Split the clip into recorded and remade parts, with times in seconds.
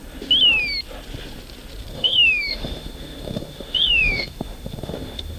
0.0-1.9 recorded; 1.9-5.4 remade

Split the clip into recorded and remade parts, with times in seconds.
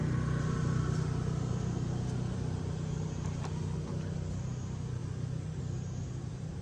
0.0-6.6 recorded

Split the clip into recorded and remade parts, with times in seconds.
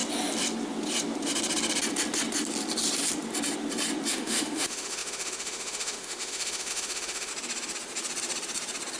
0.0-4.1 recorded; 4.1-7.3 remade; 7.3-9.0 recorded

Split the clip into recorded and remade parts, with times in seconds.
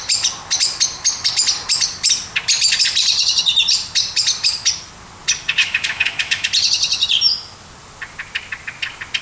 0.0-5.6 recorded; 5.6-6.5 remade; 6.5-9.2 recorded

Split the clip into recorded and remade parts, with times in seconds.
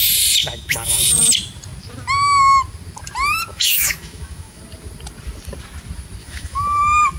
0.0-0.4 recorded; 0.4-1.0 remade; 1.0-3.5 recorded; 3.5-4.6 remade; 4.6-6.2 recorded; 6.2-6.8 remade; 6.8-7.2 recorded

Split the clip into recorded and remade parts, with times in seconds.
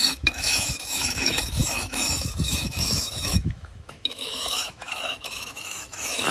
0.0-6.3 remade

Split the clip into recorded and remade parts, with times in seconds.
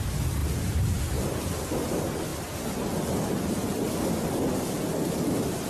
0.0-5.7 recorded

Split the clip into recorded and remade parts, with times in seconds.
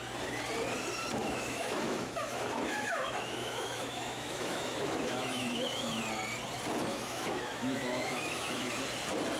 0.0-1.2 recorded; 1.2-6.0 remade; 6.0-6.9 recorded; 6.9-8.7 remade; 8.7-9.4 recorded